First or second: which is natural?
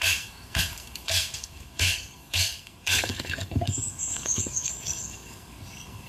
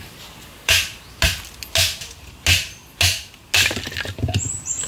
second